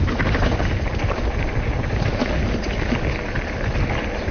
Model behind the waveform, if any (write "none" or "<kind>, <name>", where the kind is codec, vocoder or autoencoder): none